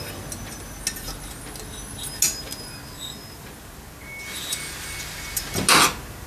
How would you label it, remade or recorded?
recorded